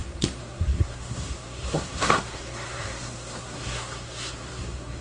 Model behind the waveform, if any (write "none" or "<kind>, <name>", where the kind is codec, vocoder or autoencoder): codec, SNAC